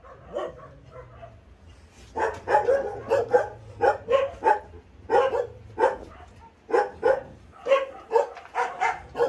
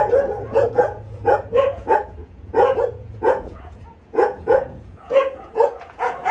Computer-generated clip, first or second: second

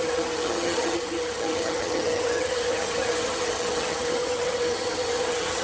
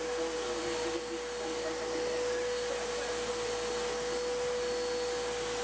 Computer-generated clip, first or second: first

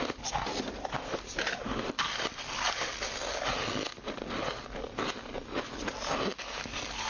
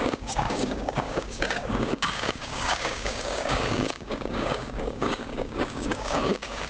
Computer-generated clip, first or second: second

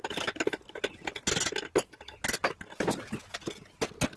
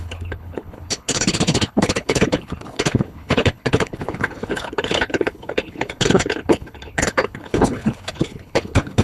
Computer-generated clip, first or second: second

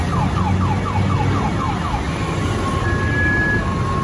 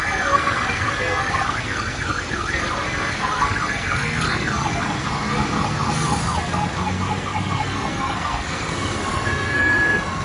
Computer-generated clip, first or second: second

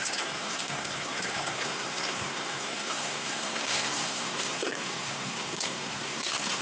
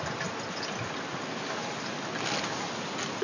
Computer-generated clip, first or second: first